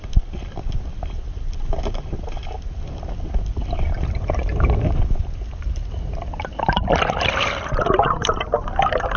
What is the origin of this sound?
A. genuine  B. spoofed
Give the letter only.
A